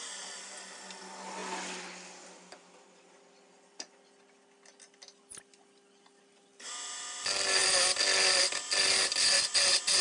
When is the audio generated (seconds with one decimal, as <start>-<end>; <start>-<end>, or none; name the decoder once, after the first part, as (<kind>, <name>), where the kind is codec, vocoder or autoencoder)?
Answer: none